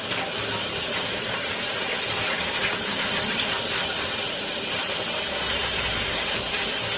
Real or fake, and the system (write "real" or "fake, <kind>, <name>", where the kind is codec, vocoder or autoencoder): real